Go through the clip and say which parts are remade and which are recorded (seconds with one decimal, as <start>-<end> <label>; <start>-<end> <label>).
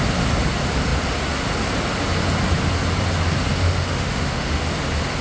0.0-3.5 recorded; 3.5-4.6 remade; 4.6-5.2 recorded